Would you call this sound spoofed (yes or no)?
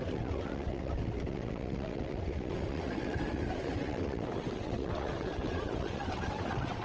yes